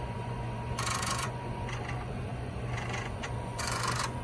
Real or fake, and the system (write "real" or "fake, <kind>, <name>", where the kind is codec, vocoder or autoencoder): fake, vocoder, Vocos